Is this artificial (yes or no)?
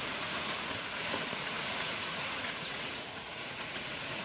yes